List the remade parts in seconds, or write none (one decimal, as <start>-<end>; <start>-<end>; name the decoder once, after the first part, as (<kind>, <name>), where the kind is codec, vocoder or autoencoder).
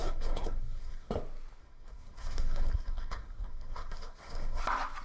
0.0-1.1 (codec, SNAC); 1.6-4.6